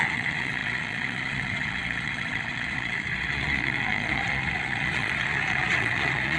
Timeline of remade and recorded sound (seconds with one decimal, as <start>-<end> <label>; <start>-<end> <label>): 0.0-6.4 remade